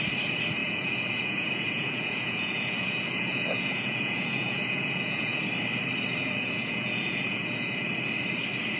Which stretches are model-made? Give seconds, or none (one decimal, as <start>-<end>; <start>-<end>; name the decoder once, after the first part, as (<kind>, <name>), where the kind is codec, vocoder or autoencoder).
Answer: 0.6-5.4 (vocoder, Vocos); 6.2-7.9